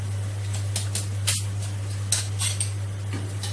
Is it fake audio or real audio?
real